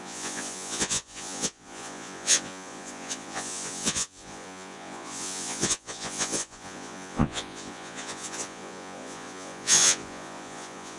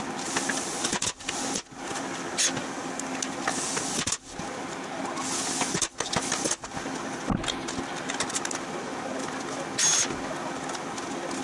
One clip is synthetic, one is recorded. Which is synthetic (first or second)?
first